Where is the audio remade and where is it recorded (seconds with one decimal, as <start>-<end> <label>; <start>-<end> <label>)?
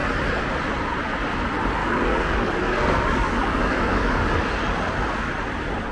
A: 0.0-1.8 recorded; 1.8-4.3 remade; 4.3-5.9 recorded